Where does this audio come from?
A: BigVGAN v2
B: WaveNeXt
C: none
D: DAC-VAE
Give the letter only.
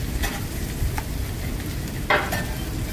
C